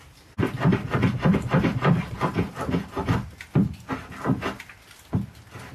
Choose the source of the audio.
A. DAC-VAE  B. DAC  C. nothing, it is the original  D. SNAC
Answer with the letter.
C